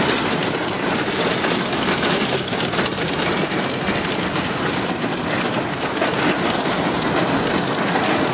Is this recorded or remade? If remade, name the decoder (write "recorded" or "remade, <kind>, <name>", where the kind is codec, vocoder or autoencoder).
recorded